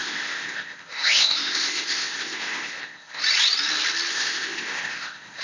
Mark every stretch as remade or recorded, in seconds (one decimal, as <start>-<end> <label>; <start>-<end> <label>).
0.0-3.2 remade; 3.2-4.1 recorded; 4.1-5.4 remade